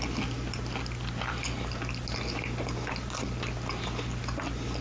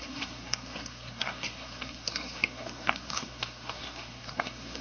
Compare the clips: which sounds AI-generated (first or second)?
second